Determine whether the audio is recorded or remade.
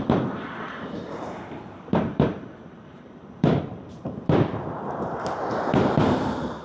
remade